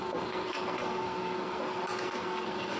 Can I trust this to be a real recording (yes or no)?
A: no